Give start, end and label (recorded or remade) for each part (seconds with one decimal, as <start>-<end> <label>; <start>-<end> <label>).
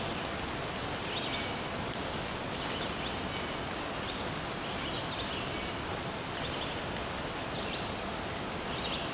0.0-9.1 recorded